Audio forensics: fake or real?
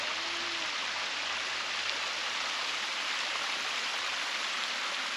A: real